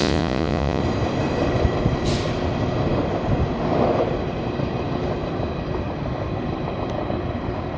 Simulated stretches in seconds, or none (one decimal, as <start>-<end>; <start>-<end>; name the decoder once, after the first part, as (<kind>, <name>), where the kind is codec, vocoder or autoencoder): 0.0-0.8 (vocoder, Vocos)